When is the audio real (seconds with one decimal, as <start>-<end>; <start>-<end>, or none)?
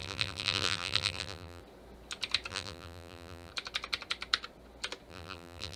1.6-2.5; 3.5-5.1